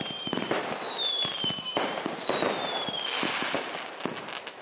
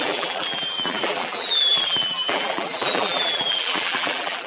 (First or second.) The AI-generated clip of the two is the second